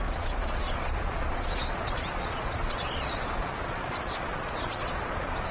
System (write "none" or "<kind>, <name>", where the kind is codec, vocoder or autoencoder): vocoder, Vocos